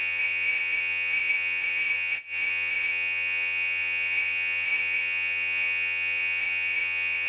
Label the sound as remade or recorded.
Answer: remade